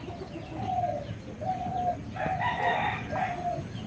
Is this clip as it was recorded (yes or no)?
yes